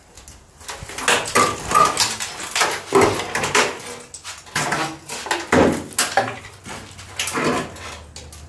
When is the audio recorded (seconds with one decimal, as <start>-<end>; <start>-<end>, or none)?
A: 0.0-8.5